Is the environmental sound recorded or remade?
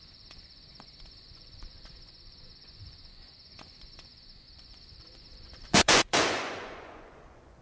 remade